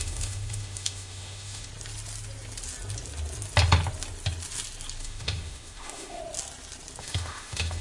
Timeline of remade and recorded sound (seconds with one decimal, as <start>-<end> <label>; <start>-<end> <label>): 0.0-1.7 remade; 1.7-5.0 recorded; 5.0-6.2 remade; 6.2-7.0 recorded; 7.0-7.8 remade

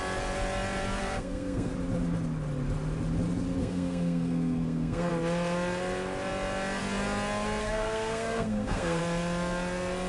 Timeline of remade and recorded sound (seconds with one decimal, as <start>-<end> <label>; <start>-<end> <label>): 0.0-1.0 recorded; 1.0-1.7 remade; 1.7-3.6 recorded; 3.6-5.1 remade; 5.1-7.6 recorded; 7.6-9.0 remade; 9.0-10.1 recorded

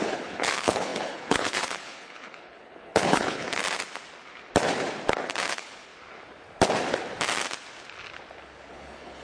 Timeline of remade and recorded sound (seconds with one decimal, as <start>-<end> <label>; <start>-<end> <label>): 0.0-3.6 remade; 3.6-5.5 recorded; 5.5-5.9 remade; 5.9-8.7 recorded; 8.7-9.2 remade